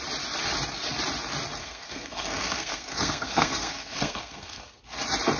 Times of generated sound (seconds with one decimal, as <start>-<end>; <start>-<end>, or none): 1.6-4.8